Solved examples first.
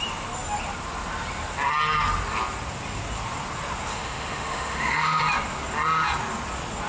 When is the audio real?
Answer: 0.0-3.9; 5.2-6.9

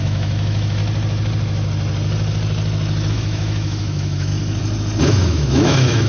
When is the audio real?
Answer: 0.8-3.1; 4.3-5.0

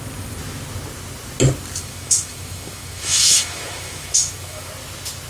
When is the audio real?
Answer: 0.0-1.8; 4.7-5.3